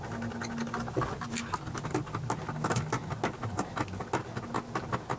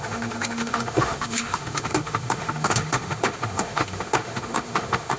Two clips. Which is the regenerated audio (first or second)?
second